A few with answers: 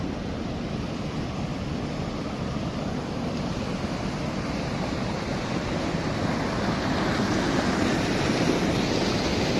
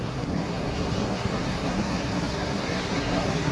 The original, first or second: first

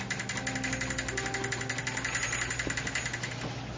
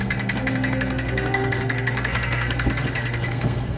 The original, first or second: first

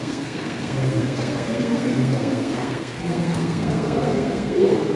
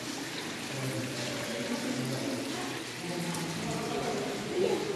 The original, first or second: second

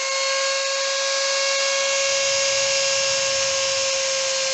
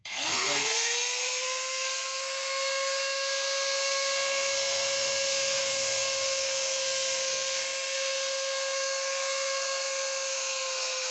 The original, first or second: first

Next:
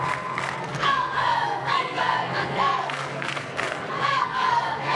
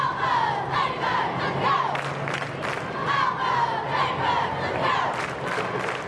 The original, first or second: second